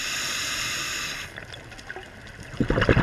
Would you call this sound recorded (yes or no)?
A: yes